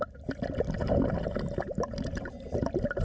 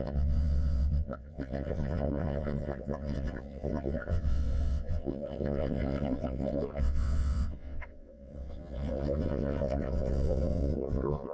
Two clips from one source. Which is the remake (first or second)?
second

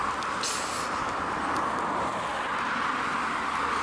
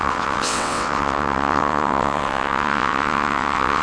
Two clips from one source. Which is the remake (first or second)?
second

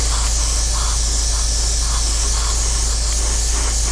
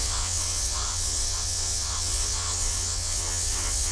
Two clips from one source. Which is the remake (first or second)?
second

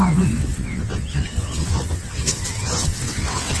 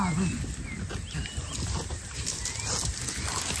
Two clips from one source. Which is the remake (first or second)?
first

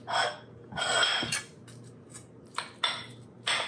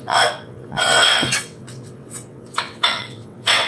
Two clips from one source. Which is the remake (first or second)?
second